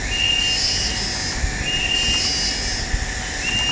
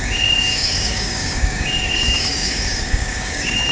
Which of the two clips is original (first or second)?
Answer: first